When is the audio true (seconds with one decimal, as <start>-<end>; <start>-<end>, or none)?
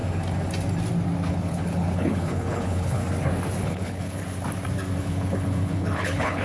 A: 0.0-1.3; 3.0-3.6; 4.2-5.0